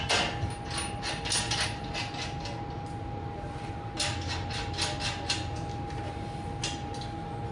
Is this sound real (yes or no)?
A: yes